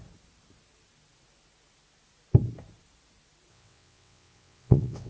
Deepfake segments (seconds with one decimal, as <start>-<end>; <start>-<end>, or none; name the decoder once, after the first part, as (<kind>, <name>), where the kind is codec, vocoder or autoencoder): 3.5-5.1 (vocoder, WaveNeXt)